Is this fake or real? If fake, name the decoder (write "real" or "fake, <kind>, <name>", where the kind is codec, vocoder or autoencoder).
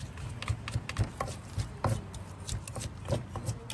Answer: real